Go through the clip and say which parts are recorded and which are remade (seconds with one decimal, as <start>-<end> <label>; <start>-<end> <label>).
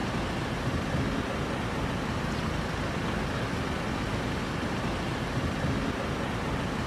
0.0-6.9 recorded